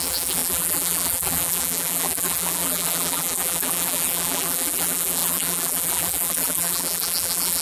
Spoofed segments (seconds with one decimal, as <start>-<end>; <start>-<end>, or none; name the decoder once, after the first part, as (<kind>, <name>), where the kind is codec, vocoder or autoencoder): 0.0-7.6 (vocoder, BigVGAN v2)